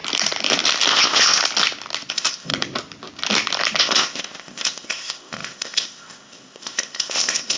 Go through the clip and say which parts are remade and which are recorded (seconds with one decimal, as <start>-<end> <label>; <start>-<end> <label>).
0.0-0.9 recorded; 0.9-1.4 remade; 1.4-2.1 recorded; 2.1-2.5 remade; 2.5-3.8 recorded; 3.8-7.6 remade